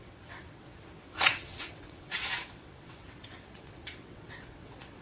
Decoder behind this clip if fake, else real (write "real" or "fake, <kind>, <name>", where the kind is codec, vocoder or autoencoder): fake, vocoder, WaveNeXt